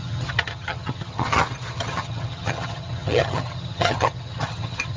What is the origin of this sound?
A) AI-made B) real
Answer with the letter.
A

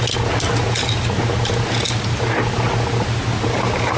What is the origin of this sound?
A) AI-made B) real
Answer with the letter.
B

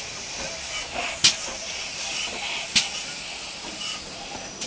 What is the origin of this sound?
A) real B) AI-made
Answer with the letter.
A